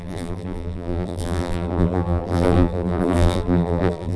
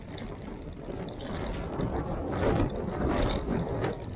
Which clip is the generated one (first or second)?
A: first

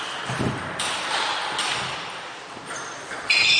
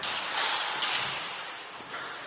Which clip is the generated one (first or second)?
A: second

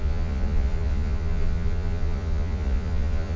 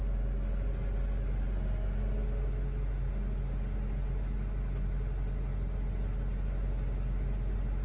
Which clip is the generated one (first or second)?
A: first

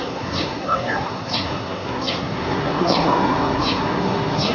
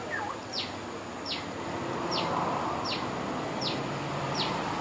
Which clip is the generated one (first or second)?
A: first